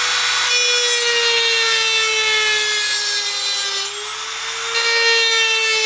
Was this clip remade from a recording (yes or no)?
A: no